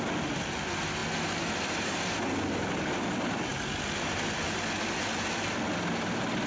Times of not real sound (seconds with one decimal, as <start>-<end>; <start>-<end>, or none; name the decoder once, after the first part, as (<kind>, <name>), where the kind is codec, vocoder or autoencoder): none